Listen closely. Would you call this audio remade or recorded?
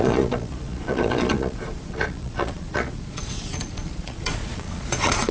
remade